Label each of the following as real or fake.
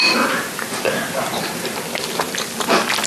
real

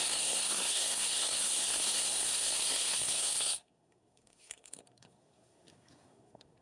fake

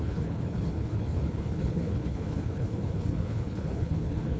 fake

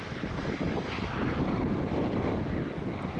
real